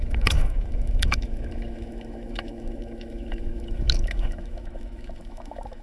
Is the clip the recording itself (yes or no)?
no